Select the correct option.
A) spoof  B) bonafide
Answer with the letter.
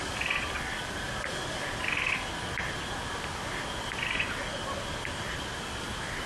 B